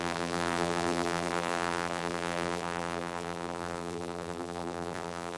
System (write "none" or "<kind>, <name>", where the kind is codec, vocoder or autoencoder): vocoder, BigVGAN v2